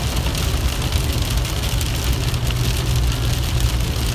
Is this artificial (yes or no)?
no